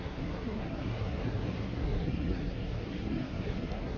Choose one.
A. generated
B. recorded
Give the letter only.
A